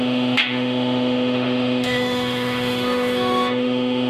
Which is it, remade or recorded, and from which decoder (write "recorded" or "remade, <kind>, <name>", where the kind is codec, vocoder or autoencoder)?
remade, autoencoder, DAC-VAE